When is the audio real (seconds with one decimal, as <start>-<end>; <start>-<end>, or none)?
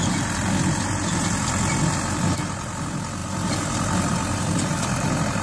0.0-3.2; 4.1-5.4